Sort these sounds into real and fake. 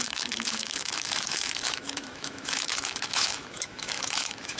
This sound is fake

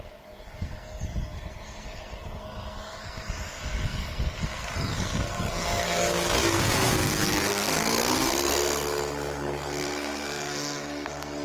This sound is fake